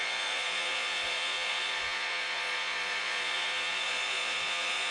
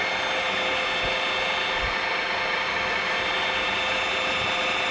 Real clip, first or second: second